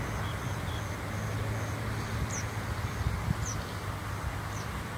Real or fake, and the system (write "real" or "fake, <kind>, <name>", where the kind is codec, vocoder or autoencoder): real